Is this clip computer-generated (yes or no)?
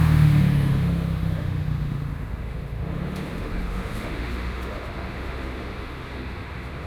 yes